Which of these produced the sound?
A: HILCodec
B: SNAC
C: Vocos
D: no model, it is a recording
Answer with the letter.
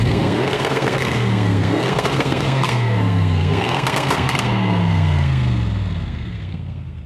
B